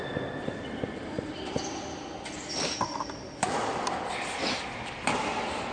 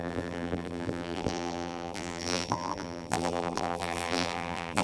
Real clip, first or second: first